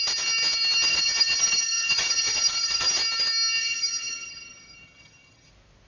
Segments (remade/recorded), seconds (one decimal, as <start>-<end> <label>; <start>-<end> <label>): 0.0-0.9 recorded; 0.9-2.9 remade; 2.9-3.6 recorded; 3.6-5.5 remade; 5.5-5.9 recorded